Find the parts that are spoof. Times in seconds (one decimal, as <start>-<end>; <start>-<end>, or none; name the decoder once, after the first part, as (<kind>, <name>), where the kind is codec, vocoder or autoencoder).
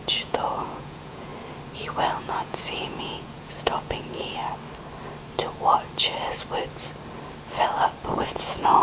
0.0-1.3 (vocoder, Vocos); 2.2-4.4; 8.0-8.8